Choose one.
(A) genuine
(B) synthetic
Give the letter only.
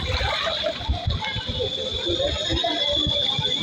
A